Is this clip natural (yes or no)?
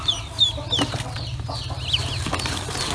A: yes